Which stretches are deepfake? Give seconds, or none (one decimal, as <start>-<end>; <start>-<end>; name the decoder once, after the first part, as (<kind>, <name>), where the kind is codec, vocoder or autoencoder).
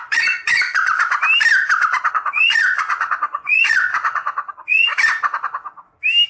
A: 0.0-0.9 (vocoder, Vocos); 2.1-4.9